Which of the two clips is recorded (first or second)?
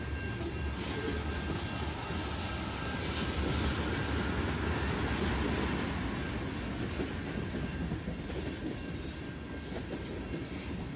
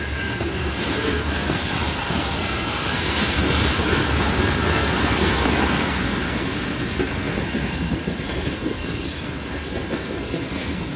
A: first